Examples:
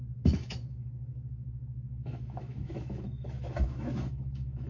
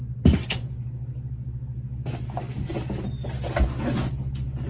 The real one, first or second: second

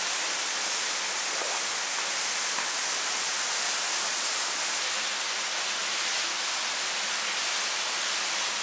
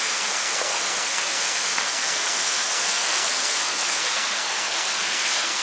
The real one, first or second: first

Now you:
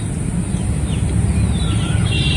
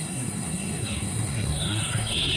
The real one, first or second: first